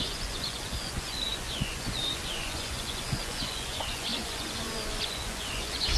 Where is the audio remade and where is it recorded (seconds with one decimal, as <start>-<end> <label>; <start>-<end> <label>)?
0.0-6.0 remade